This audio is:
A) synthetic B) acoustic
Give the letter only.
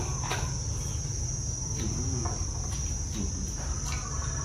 B